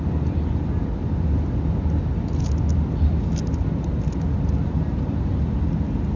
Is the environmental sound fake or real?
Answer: real